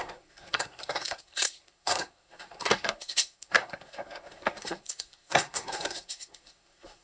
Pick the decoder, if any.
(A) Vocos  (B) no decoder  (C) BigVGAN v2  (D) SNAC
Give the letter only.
D